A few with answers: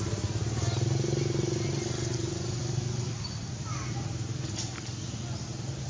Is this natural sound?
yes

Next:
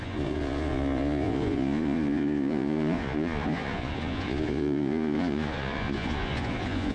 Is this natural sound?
no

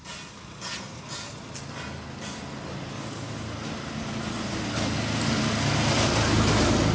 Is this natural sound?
yes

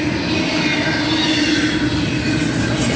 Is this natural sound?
yes